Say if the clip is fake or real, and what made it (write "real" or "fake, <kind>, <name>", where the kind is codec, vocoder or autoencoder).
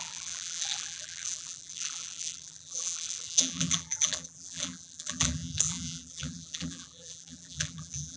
fake, vocoder, BigVGAN v2